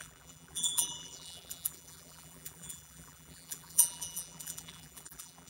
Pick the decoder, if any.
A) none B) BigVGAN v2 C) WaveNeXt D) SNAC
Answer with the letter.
B